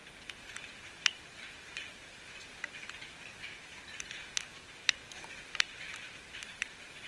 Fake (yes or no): no